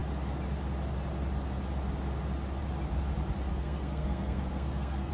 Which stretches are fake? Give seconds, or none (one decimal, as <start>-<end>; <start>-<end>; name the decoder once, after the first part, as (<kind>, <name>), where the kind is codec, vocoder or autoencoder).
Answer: 3.5-5.1 (codec, SNAC)